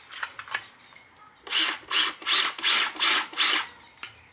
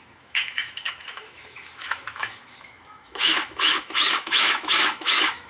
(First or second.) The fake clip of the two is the second